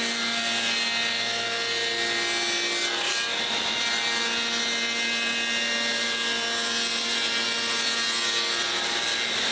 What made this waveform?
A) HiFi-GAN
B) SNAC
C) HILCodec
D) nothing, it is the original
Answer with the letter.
D